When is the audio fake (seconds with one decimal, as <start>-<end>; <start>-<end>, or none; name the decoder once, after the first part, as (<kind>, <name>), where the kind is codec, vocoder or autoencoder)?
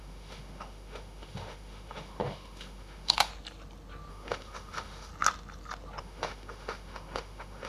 0.0-3.3 (autoencoder, DAC-VAE); 4.1-5.1; 6.0-7.7